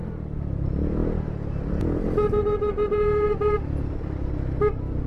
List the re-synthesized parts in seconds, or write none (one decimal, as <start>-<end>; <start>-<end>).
none